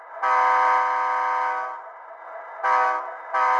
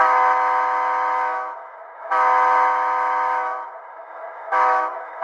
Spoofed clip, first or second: second